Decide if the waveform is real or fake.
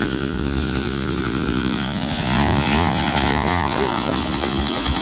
fake